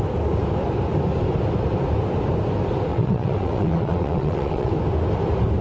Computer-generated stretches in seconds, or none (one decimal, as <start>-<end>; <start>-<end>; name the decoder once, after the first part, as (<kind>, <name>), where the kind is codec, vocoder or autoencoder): 2.9-4.7 (vocoder, WaveNeXt)